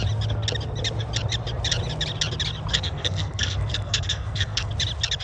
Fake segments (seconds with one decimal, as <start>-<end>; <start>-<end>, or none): 2.7-4.7